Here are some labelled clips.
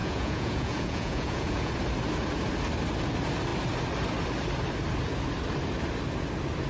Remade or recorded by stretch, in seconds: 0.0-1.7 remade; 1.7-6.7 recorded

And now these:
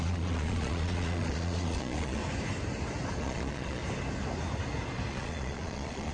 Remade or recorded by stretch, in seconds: 0.0-2.2 remade; 2.2-3.2 recorded; 3.2-3.8 remade; 3.8-5.1 recorded; 5.1-6.1 remade

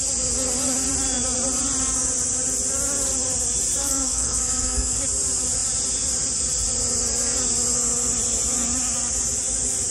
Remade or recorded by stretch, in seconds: 0.0-3.8 recorded; 3.8-5.0 remade; 5.0-9.9 recorded

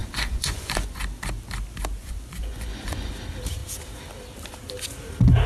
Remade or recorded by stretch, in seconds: 0.0-1.0 remade; 1.0-2.0 recorded; 2.0-3.1 remade; 3.1-5.5 recorded

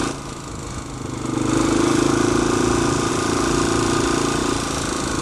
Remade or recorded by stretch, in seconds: 0.0-5.2 recorded

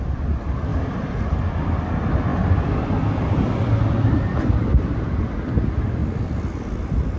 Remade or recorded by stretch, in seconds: 0.0-0.7 recorded; 0.7-1.2 remade; 1.2-2.3 recorded; 2.3-5.2 remade; 5.2-6.0 recorded; 6.0-6.6 remade; 6.6-7.2 recorded

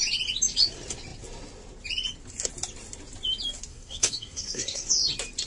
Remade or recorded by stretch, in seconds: 0.0-3.7 recorded; 3.7-4.9 remade; 4.9-5.5 recorded

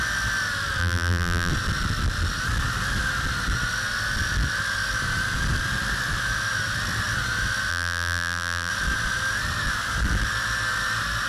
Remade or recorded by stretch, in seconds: 0.0-0.8 recorded; 0.8-1.5 remade; 1.5-7.7 recorded; 7.7-8.7 remade; 8.7-11.3 recorded